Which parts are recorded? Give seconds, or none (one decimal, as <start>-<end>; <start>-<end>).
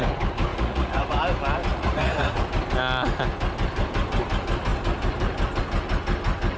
0.0-0.5; 1.2-1.7; 2.4-6.6